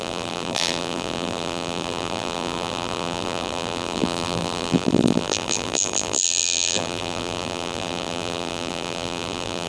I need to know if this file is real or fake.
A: fake